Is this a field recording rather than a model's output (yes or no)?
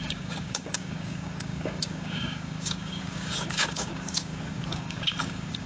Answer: no